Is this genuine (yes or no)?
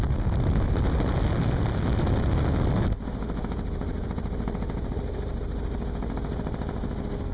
yes